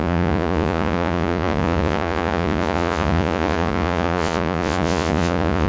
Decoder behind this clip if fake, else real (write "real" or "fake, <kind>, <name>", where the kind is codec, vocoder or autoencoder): fake, vocoder, Vocos